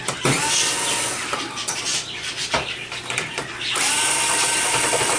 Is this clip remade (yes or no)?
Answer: yes